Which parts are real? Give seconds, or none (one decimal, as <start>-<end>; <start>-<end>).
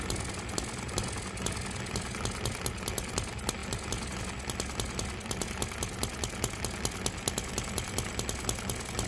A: 0.0-9.1